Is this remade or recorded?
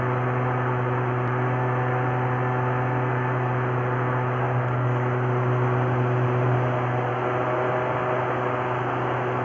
recorded